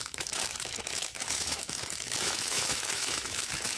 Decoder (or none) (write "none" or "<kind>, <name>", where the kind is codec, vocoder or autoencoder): autoencoder, DAC-VAE